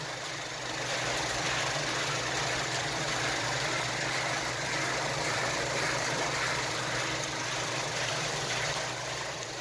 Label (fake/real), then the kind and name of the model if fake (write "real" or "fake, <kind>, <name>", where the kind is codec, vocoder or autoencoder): fake, vocoder, BigVGAN v2